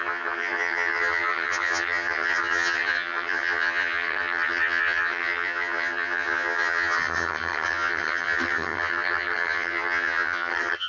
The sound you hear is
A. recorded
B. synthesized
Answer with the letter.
B